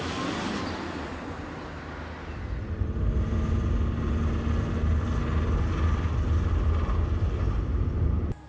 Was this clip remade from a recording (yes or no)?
no